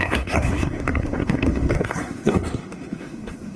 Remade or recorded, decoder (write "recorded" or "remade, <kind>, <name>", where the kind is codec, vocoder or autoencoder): remade, codec, SNAC